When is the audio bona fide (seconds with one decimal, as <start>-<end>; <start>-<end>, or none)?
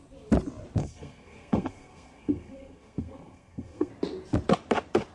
0.0-0.8; 3.9-5.1